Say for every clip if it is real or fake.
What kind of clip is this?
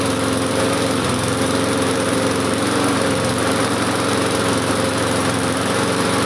fake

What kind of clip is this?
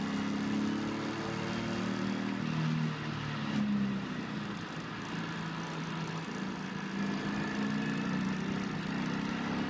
real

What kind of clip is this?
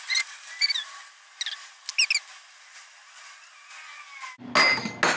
real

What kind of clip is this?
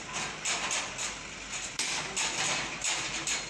fake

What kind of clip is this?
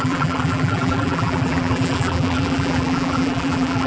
fake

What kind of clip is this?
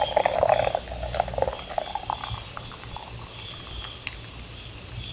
real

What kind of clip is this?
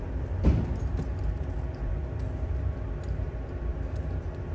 fake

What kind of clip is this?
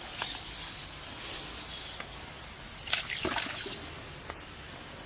real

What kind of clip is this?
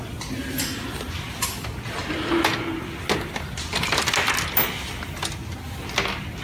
real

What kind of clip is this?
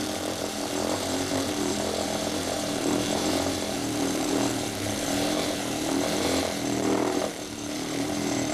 fake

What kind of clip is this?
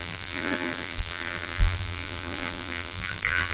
fake